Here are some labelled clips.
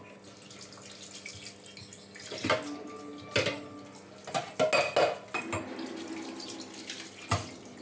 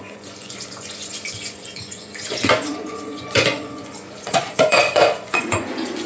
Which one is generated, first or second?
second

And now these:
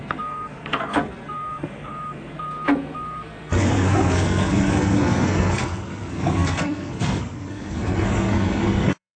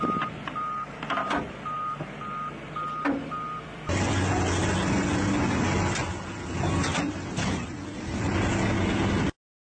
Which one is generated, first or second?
first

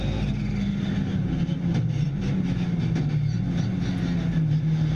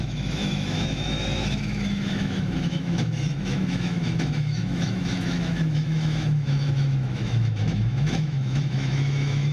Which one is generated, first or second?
second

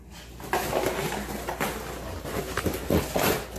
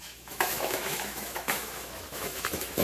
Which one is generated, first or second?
second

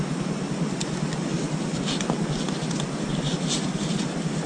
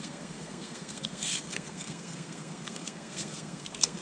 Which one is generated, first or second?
second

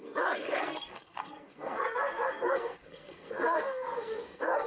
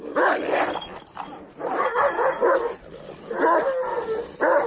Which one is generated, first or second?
first